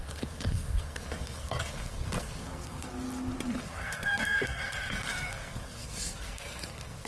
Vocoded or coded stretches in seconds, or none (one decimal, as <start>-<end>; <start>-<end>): 0.0-2.9; 3.6-7.1